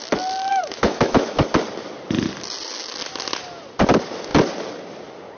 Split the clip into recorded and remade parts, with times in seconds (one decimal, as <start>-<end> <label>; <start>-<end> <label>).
0.0-0.5 recorded; 0.5-1.4 remade; 1.4-5.4 recorded